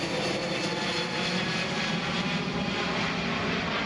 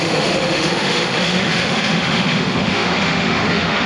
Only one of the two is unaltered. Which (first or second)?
first